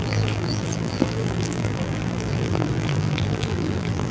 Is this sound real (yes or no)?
no